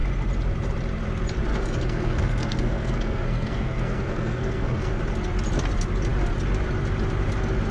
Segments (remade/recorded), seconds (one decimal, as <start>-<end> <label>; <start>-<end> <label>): 0.0-1.5 recorded; 1.5-5.0 remade; 5.0-7.7 recorded